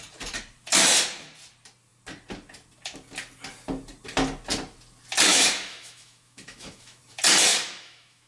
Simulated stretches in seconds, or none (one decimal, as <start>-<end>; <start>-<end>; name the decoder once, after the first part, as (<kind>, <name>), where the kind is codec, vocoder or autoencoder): 5.3-7.0 (autoencoder, DAC-VAE); 7.5-8.3